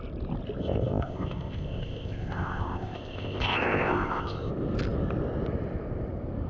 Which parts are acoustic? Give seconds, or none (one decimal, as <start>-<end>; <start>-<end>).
0.0-0.6; 4.5-6.5